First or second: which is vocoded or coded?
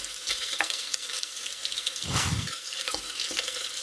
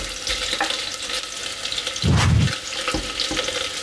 first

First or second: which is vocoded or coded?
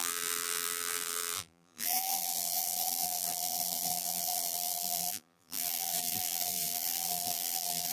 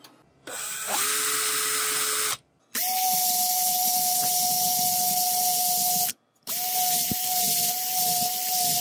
first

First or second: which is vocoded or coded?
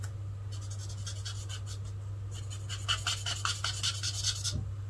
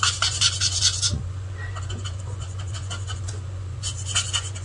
second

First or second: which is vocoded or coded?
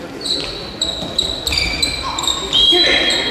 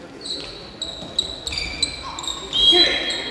first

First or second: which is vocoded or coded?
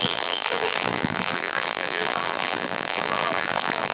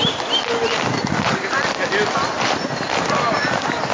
first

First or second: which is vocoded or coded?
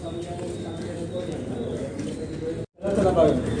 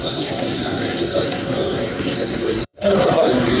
second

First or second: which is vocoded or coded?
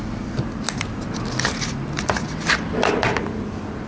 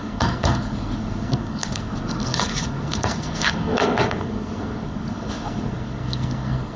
second